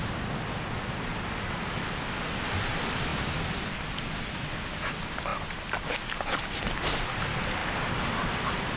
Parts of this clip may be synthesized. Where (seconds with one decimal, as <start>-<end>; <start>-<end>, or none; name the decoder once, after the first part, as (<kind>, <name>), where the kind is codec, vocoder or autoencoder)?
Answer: none